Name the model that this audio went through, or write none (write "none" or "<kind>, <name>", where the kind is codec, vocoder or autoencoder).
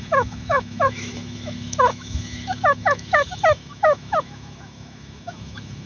autoencoder, DAC-VAE